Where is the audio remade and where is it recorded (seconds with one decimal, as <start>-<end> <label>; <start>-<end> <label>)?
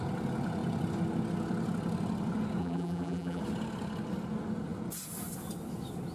0.0-2.6 recorded; 2.6-3.4 remade; 3.4-6.1 recorded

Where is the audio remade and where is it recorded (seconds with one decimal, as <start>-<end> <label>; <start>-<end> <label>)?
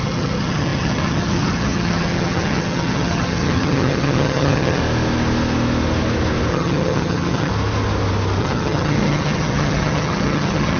0.0-4.8 remade; 4.8-6.5 recorded; 6.5-7.5 remade; 7.5-8.4 recorded; 8.4-10.8 remade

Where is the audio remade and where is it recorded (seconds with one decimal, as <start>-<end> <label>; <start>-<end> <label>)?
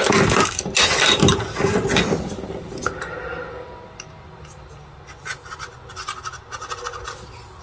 0.0-7.6 recorded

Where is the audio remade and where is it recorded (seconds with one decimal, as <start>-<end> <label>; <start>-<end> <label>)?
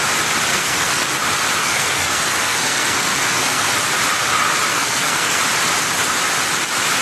0.0-0.5 recorded; 0.5-1.1 remade; 1.1-1.6 recorded; 1.6-3.7 remade; 3.7-4.7 recorded; 4.7-5.4 remade; 5.4-7.0 recorded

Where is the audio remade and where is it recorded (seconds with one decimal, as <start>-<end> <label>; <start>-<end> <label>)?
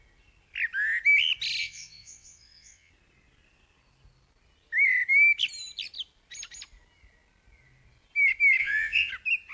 0.0-1.6 recorded; 1.6-2.9 remade; 2.9-8.6 recorded; 8.6-9.1 remade; 9.1-9.5 recorded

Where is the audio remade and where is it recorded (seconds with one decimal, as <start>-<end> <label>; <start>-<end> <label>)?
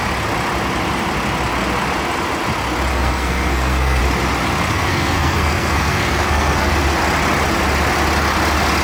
0.0-2.9 recorded; 2.9-4.0 remade; 4.0-4.7 recorded; 4.7-6.7 remade; 6.7-8.8 recorded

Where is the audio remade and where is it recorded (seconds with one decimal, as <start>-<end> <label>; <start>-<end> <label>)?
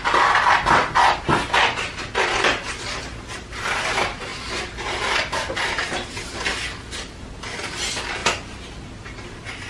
0.0-4.3 recorded; 4.3-6.1 remade; 6.1-9.7 recorded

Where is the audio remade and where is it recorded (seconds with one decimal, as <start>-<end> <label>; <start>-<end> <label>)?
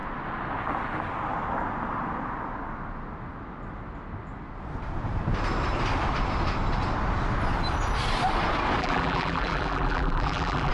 0.0-8.8 recorded; 8.8-10.7 remade